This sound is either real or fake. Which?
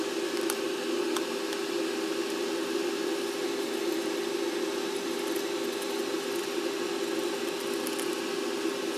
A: real